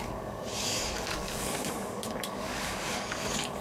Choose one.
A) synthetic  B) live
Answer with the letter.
A